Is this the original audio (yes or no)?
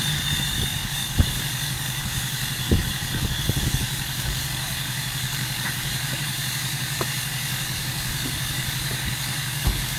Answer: no